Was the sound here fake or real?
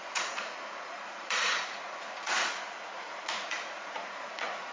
fake